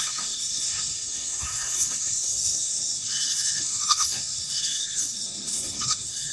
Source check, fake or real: fake